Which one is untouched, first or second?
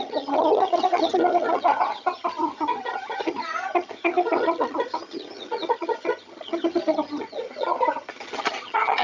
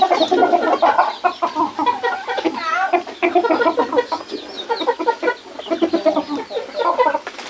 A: second